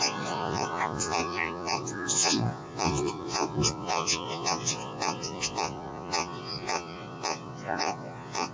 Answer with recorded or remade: remade